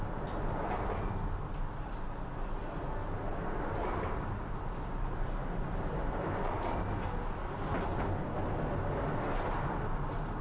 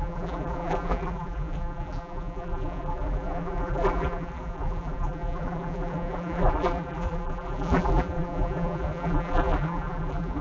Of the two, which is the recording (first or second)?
first